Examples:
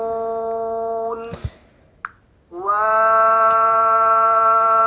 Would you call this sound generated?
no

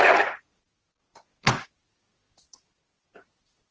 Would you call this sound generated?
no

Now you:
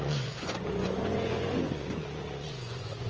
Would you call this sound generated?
yes